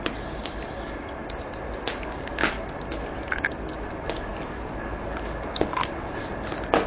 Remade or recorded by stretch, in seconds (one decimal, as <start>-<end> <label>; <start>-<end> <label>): 0.0-6.9 recorded